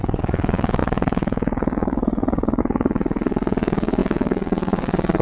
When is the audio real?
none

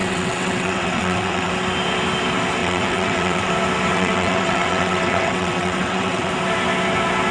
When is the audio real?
1.5-2.6; 3.5-3.9; 6.3-7.3

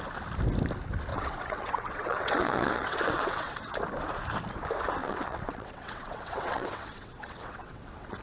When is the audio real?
0.0-1.1; 3.8-5.0

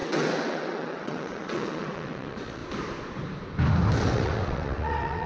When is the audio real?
2.6-4.0

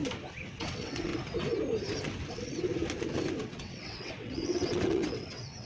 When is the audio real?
0.0-0.5; 1.1-2.3; 2.7-3.4